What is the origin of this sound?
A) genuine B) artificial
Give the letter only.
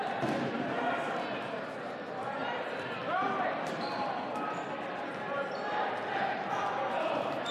A